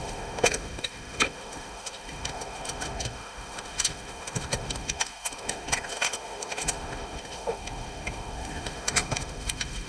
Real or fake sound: fake